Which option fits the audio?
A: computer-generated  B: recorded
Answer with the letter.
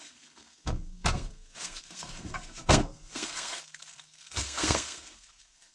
A